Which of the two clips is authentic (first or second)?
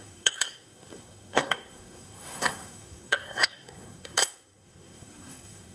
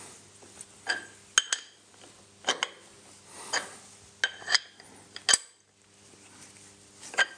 second